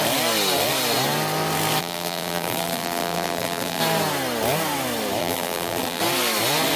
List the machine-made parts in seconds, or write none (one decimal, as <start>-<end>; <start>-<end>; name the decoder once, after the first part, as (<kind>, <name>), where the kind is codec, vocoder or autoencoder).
1.8-3.8 (vocoder, BigVGAN v2); 5.2-6.0